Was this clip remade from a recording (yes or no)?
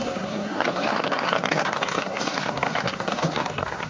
yes